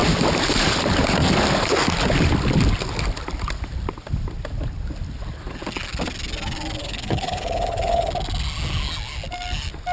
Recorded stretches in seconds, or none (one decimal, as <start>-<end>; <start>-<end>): 0.0-6.8; 8.1-9.9